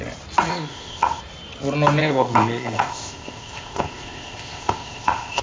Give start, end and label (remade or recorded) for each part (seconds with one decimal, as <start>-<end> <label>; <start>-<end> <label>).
0.0-0.5 recorded; 0.5-1.2 remade; 1.2-2.0 recorded; 2.0-5.4 remade